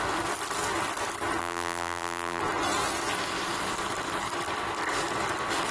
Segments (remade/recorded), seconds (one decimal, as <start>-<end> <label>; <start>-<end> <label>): 0.0-1.4 recorded; 1.4-2.4 remade; 2.4-5.7 recorded